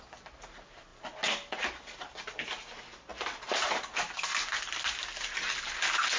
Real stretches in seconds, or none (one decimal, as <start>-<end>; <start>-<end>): 0.0-6.2